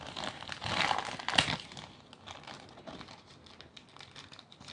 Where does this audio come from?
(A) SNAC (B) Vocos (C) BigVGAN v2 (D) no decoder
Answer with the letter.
D